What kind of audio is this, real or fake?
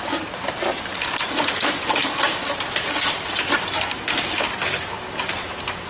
fake